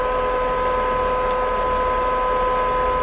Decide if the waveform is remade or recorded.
recorded